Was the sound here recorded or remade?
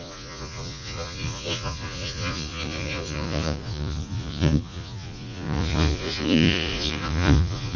remade